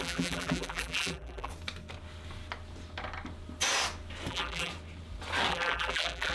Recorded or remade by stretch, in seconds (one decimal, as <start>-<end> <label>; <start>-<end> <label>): 0.0-1.5 remade; 1.5-4.3 recorded; 4.3-4.7 remade; 4.7-5.5 recorded; 5.5-6.3 remade